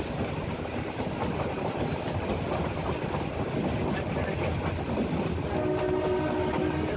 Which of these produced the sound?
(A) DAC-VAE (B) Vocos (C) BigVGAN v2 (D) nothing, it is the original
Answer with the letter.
D